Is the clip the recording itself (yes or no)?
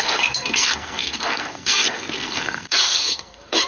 no